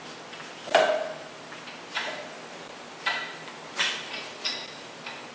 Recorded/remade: recorded